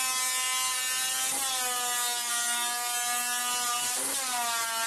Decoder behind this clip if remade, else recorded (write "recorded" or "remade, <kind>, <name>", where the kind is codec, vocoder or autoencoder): recorded